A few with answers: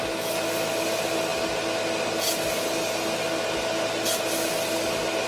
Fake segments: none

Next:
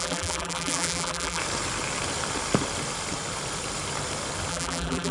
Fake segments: 0.0-1.4 (vocoder, BigVGAN v2); 4.5-5.1

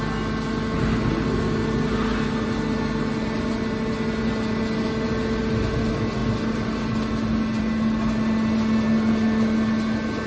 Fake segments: none

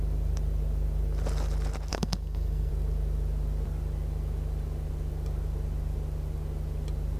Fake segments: 1.9-2.7 (codec, SNAC)